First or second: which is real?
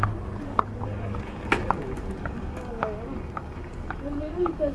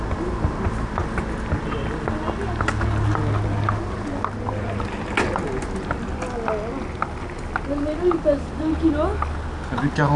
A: second